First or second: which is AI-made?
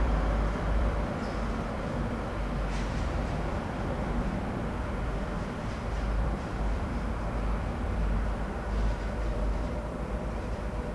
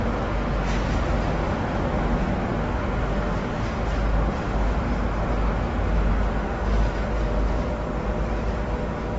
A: first